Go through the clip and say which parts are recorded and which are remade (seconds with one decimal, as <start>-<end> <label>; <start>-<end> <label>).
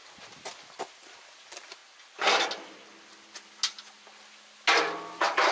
0.0-1.4 recorded; 1.4-1.8 remade; 1.8-5.1 recorded; 5.1-5.5 remade